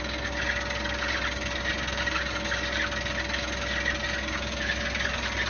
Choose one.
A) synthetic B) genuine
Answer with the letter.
B